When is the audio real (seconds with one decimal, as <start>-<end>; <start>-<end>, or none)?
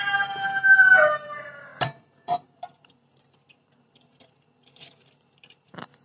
none